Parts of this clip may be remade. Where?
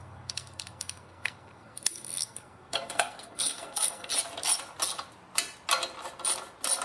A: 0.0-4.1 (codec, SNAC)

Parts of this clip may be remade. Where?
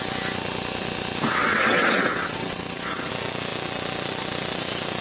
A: 1.4-3.1 (vocoder, WaveNeXt)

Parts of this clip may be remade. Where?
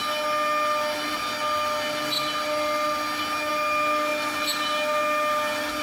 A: none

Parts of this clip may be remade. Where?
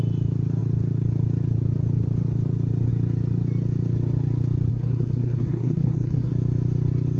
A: 4.7-6.3 (codec, SNAC)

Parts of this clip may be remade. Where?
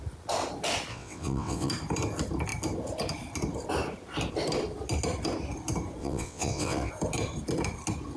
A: 0.9-1.7 (vocoder, WaveNeXt); 6.0-6.9